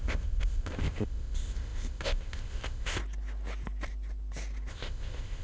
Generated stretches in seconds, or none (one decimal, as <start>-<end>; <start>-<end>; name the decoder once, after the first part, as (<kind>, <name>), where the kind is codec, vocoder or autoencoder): 0.0-3.0 (codec, ZipCodec); 4.7-5.4